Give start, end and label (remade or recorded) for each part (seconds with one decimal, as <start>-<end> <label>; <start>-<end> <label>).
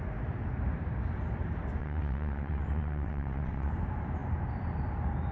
0.0-1.8 recorded; 1.8-3.7 remade; 3.7-5.3 recorded